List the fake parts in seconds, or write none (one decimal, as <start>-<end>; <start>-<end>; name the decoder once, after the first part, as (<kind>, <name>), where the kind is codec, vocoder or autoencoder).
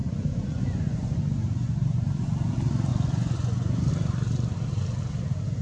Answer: 0.0-1.2 (vocoder, Vocos); 2.9-3.9